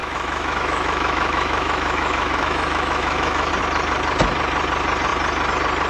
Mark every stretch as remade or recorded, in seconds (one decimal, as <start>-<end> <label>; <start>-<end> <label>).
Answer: 0.0-3.5 remade; 3.5-5.9 recorded